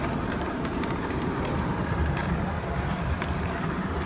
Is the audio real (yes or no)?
no